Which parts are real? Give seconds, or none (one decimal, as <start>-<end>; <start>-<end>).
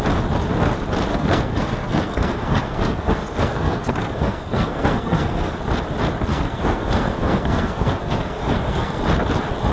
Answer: 0.0-1.1; 5.5-6.3; 9.0-9.7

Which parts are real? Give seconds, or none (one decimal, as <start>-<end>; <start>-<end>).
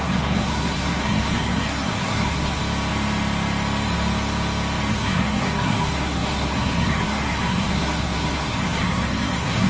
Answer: 2.6-4.9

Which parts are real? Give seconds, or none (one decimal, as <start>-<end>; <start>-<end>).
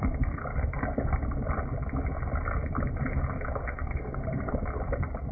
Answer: 0.4-3.6; 4.5-5.3